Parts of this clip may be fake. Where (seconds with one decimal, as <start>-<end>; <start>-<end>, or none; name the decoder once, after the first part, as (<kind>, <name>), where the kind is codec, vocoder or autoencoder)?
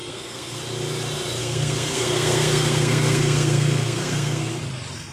0.0-0.6 (codec, SNAC); 1.4-4.5